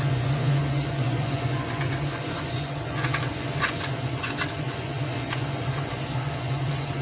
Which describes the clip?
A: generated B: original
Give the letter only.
A